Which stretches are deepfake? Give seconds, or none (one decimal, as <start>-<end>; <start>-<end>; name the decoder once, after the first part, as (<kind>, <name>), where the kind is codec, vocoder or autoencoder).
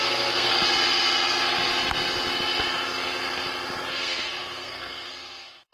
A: 0.0-0.5 (codec, SNAC); 3.9-5.7